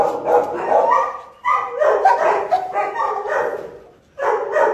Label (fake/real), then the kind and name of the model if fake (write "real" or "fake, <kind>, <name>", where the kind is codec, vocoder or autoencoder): real